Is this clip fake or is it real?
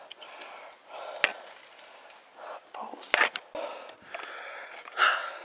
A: real